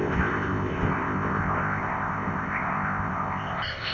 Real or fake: fake